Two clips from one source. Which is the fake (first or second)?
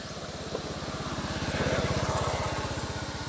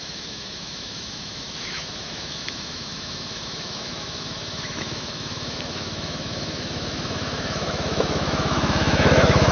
second